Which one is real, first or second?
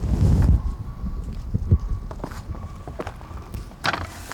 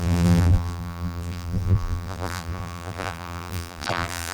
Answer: first